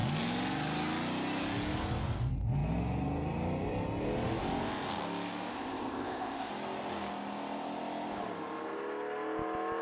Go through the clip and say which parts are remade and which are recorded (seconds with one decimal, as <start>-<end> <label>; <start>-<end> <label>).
0.0-5.5 recorded; 5.5-6.5 remade; 6.5-9.8 recorded